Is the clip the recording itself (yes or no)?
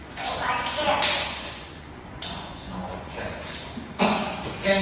no